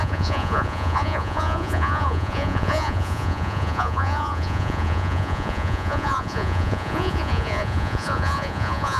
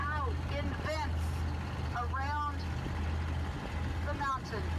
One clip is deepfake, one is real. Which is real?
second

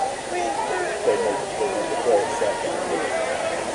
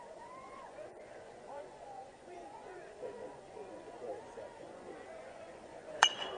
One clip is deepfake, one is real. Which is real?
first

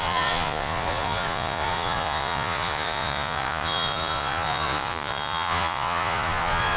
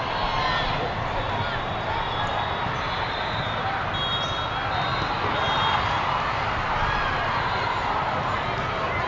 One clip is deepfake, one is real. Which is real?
second